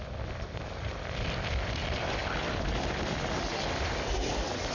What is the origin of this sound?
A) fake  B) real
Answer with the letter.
B